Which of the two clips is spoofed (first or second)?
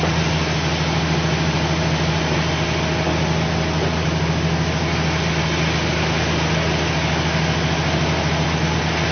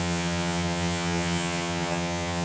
second